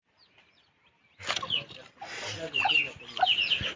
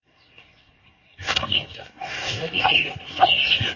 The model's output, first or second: second